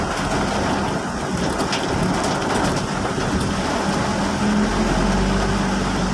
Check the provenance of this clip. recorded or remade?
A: recorded